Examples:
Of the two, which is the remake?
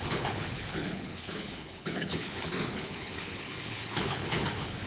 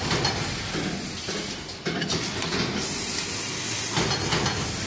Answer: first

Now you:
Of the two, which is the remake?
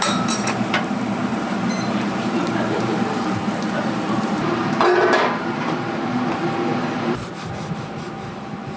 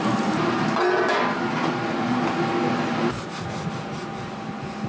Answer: first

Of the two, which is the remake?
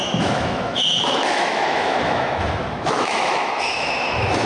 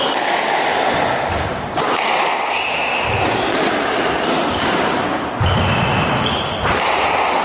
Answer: first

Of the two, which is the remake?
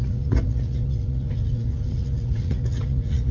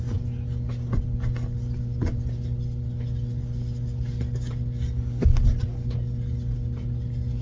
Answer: first